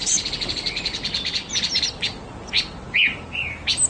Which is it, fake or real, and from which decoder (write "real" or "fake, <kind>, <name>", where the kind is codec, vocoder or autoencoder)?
real